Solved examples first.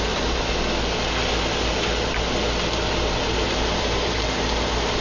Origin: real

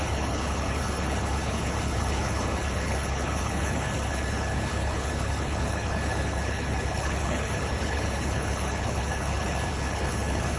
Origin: fake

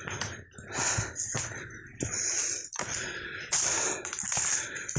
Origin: real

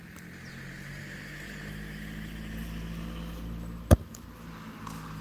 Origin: real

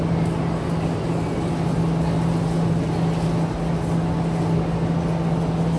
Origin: real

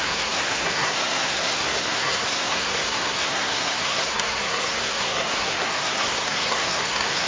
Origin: fake